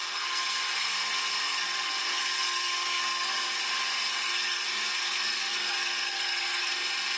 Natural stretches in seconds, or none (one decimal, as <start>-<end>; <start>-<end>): 3.6-4.0; 6.7-7.2